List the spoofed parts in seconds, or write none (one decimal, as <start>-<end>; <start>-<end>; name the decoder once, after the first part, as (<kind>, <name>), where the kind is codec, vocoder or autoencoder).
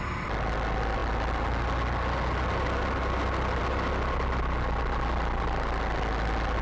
none